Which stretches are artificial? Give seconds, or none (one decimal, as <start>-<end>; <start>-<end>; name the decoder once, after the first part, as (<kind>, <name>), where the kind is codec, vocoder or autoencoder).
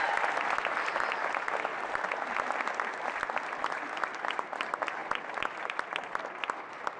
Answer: none